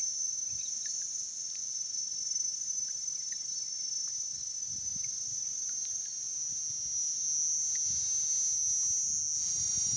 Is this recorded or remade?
recorded